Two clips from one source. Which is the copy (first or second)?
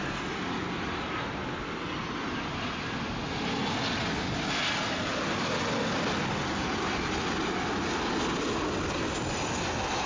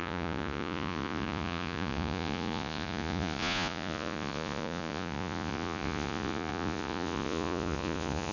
second